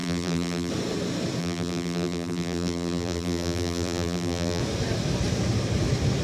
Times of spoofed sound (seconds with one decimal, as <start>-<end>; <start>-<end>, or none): 0.0-0.7; 1.4-4.6